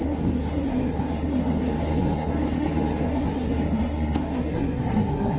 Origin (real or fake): fake